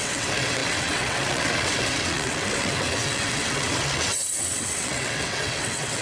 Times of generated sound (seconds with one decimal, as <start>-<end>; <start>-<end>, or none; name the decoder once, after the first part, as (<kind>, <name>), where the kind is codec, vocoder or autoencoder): 0.0-6.0 (vocoder, WaveNeXt)